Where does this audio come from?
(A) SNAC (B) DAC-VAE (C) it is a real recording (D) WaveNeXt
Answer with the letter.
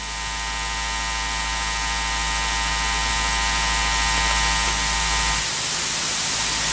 C